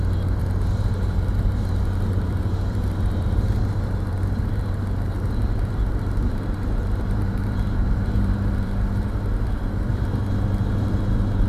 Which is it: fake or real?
fake